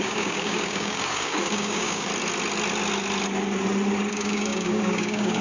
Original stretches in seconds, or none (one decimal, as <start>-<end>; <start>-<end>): 2.1-4.1